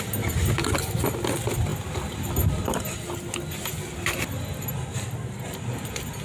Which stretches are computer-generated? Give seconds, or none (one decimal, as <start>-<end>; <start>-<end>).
none